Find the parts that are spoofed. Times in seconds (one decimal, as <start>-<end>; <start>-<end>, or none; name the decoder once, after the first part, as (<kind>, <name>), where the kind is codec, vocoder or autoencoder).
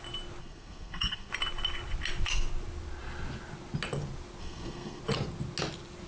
0.4-1.3 (codec, SNAC); 4.4-5.0